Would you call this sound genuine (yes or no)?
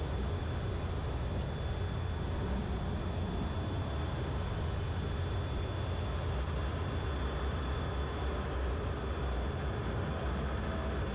yes